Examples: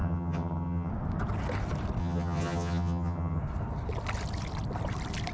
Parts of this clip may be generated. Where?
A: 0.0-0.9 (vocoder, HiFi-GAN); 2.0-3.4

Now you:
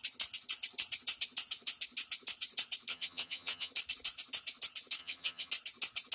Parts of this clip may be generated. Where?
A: 2.9-3.7 (vocoder, HiFi-GAN); 5.0-5.5

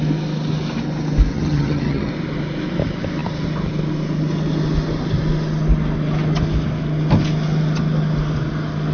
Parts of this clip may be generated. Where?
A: 1.3-2.1 (vocoder, HiFi-GAN)

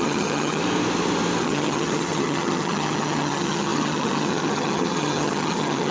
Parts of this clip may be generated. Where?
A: 0.0-0.6 (vocoder, HiFi-GAN); 1.4-5.9

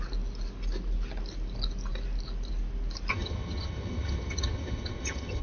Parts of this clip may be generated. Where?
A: 3.1-5.4 (vocoder, HiFi-GAN)

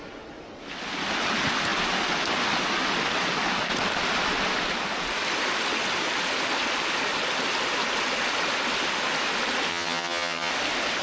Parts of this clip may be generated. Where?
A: 9.7-10.5 (vocoder, HiFi-GAN)

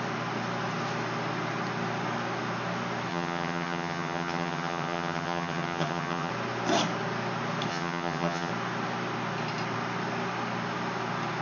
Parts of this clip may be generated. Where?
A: 3.1-6.3 (vocoder, HiFi-GAN); 7.7-8.5